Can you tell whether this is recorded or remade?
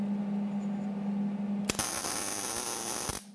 recorded